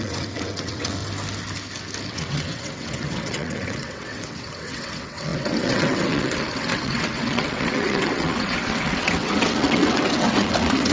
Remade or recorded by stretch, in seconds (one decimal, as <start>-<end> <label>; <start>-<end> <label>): 0.0-1.0 remade; 1.0-2.1 recorded; 2.1-10.9 remade